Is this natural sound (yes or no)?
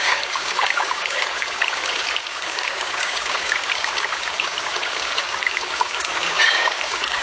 no